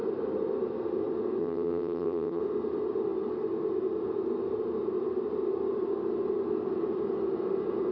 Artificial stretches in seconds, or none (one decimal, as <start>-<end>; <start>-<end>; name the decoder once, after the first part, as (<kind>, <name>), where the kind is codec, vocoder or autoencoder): 1.4-2.4 (vocoder, HiFi-GAN)